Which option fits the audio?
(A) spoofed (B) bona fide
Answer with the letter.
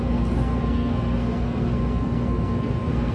A